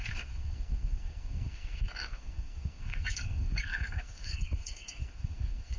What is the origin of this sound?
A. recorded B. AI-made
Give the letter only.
B